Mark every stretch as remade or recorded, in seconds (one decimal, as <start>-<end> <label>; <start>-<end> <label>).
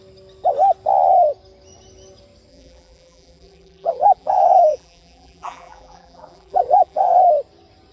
0.0-2.5 recorded; 2.5-7.2 remade; 7.2-7.9 recorded